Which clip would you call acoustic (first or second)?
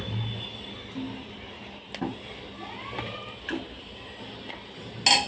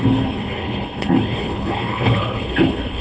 first